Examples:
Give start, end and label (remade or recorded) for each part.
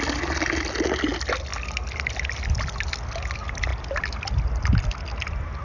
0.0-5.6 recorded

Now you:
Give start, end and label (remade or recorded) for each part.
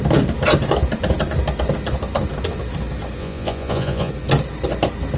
0.0-3.2 recorded; 3.2-4.1 remade; 4.1-5.2 recorded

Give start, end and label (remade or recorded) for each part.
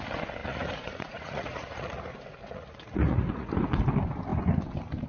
0.0-0.4 recorded; 0.4-3.5 remade; 3.5-5.1 recorded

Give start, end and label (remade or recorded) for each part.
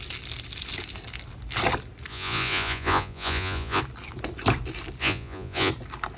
0.0-2.1 recorded; 2.1-3.8 remade; 3.8-5.0 recorded; 5.0-5.7 remade; 5.7-6.2 recorded